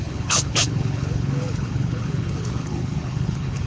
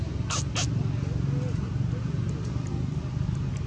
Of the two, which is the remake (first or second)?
first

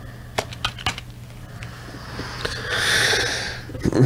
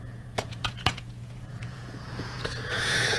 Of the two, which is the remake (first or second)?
second